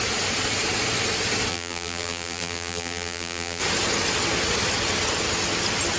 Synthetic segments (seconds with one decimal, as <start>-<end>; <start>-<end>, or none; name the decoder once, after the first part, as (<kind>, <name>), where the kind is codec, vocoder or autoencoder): 1.5-3.6 (vocoder, BigVGAN v2)